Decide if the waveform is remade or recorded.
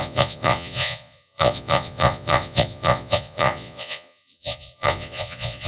remade